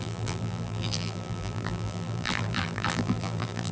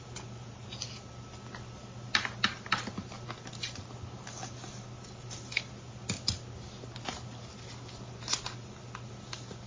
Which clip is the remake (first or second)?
first